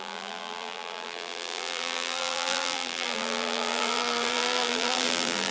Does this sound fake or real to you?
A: fake